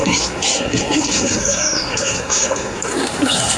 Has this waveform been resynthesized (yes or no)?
yes